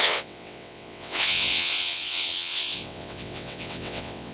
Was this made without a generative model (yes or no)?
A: no